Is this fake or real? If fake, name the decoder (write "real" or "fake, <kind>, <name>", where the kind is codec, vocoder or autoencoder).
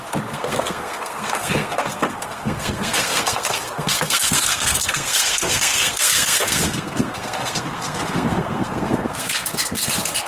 fake, codec, SNAC